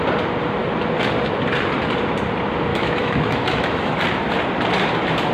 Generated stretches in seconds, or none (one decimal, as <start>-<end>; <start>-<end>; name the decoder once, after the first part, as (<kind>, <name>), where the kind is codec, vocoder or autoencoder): 2.7-3.9 (autoencoder, DAC-VAE)